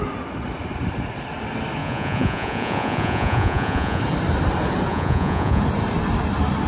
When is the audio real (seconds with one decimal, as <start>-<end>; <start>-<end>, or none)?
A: 0.0-1.8; 4.0-4.9; 5.6-6.7